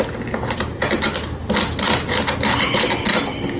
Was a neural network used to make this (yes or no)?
no